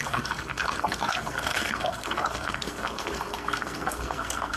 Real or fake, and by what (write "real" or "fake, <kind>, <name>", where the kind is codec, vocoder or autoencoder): fake, codec, SNAC